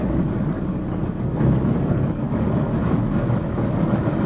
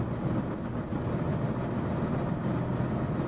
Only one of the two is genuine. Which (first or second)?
second